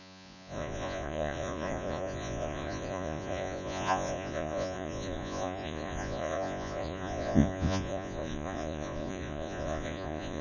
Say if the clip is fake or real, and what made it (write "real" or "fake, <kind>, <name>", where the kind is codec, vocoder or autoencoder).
fake, vocoder, Vocos